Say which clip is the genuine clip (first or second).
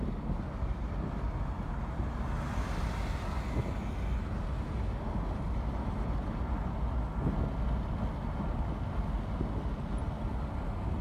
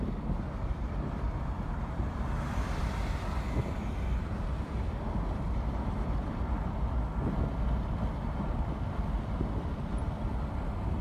first